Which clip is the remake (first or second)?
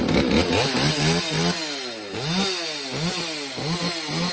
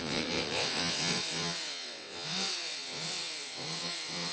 second